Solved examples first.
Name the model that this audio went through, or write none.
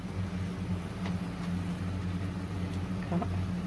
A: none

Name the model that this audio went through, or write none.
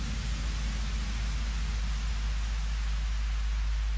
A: none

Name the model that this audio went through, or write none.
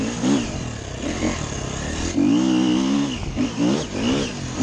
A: none